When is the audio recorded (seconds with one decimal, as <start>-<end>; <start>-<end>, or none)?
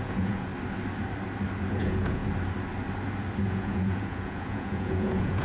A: 0.5-1.7; 2.2-3.4